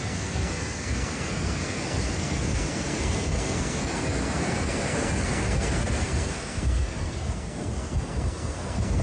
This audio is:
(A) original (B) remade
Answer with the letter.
B